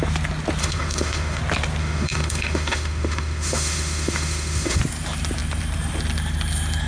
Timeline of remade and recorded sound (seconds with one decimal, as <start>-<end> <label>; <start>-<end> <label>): 0.0-0.6 recorded; 0.6-1.4 remade; 1.4-1.8 recorded; 1.8-4.8 remade; 4.8-6.9 recorded

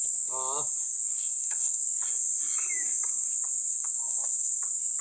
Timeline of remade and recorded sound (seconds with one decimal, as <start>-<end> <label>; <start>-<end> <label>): 0.0-1.2 recorded; 1.2-1.8 remade; 1.8-3.7 recorded; 3.7-4.5 remade; 4.5-5.0 recorded

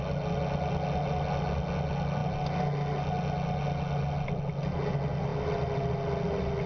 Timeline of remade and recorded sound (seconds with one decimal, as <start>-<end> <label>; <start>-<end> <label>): 0.0-6.7 recorded

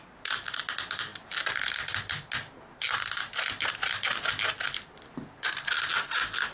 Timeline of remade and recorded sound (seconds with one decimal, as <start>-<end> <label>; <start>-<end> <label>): 0.0-6.5 recorded

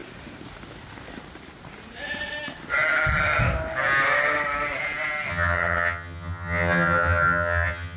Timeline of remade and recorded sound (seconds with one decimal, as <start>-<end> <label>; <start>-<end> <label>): 0.0-5.3 recorded; 5.3-8.0 remade

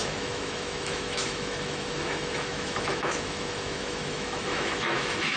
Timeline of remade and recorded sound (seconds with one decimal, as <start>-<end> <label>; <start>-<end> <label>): 0.0-5.4 remade